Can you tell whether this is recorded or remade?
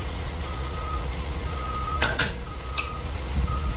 remade